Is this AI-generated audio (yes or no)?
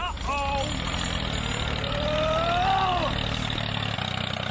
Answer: no